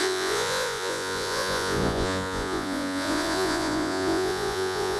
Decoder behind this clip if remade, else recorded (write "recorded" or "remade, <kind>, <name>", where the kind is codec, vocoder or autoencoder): remade, vocoder, Vocos